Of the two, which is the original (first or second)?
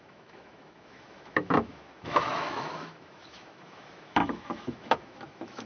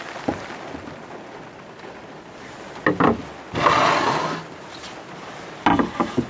second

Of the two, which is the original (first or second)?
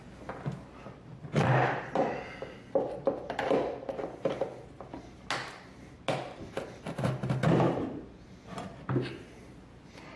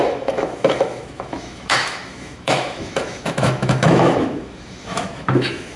first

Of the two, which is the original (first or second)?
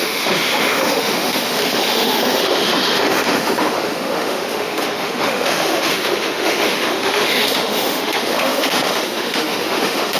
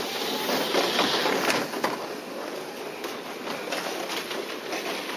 second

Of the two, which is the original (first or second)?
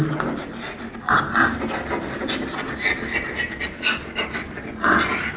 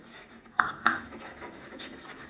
first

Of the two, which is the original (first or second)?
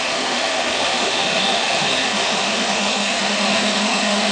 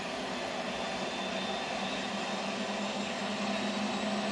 second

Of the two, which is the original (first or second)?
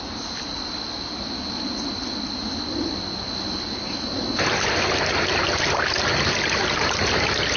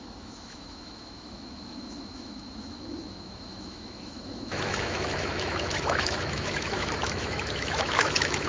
first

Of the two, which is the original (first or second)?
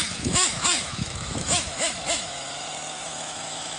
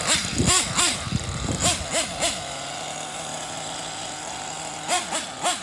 second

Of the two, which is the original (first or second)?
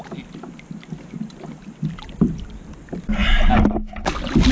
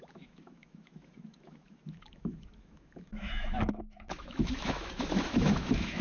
first